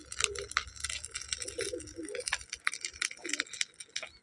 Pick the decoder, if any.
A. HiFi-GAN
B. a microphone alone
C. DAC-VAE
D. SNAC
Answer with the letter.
B